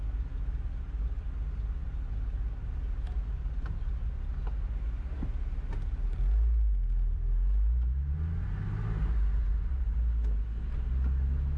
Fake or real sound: real